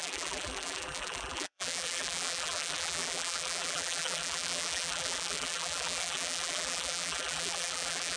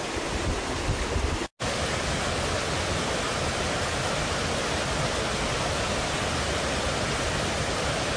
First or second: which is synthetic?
first